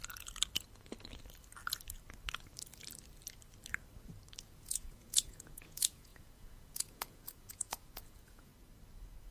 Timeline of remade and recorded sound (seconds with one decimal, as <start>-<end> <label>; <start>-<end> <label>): 0.0-4.4 recorded; 4.4-8.5 remade; 8.5-9.3 recorded